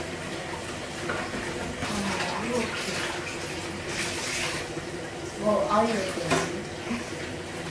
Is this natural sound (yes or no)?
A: yes